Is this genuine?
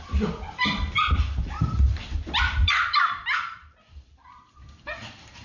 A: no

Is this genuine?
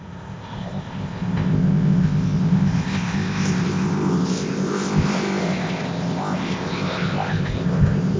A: no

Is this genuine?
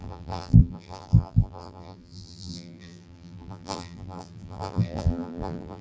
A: no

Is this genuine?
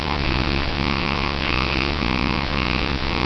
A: no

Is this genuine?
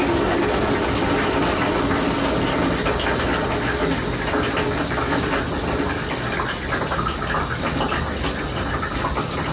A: yes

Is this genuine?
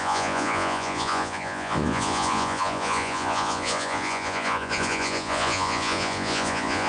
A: no